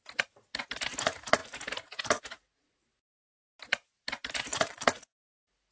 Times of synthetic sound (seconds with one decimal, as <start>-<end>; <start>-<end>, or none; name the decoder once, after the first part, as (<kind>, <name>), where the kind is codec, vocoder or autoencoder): 4.5-5.2 (vocoder, Vocos)